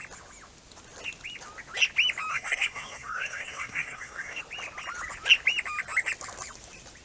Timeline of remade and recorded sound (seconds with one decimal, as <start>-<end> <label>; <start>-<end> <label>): 0.0-2.3 recorded; 2.3-4.4 remade; 4.4-7.0 recorded